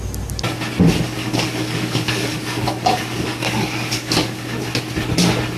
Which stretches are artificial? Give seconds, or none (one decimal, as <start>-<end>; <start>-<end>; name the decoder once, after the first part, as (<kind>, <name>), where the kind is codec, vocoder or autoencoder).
1.2-4.6 (codec, DAC)